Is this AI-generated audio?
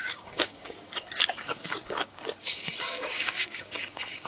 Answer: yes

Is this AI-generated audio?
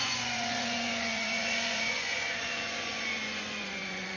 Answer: yes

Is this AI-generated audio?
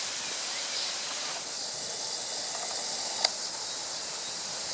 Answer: no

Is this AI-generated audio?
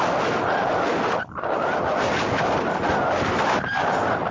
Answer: no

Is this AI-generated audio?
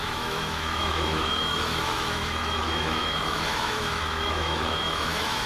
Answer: yes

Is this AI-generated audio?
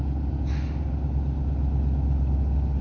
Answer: no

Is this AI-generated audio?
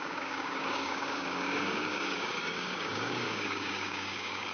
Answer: yes